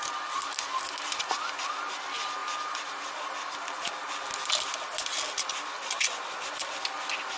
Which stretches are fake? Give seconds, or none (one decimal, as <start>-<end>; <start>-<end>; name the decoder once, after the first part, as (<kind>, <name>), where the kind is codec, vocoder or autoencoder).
none